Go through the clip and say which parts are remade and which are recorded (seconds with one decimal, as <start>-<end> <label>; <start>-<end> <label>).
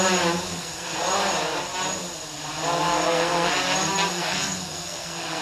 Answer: 0.0-0.5 recorded; 0.5-1.0 remade; 1.0-2.9 recorded; 2.9-3.5 remade; 3.5-4.1 recorded; 4.1-5.4 remade